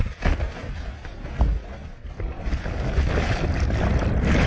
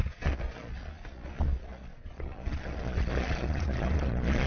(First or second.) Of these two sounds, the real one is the first